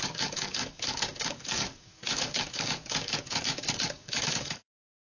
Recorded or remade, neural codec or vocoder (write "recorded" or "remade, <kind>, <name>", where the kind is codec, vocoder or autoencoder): remade, codec, DAC